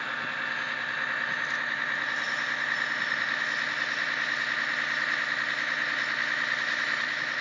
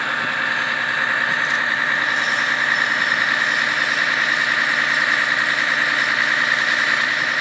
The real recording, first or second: first